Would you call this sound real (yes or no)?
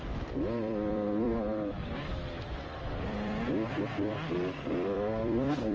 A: no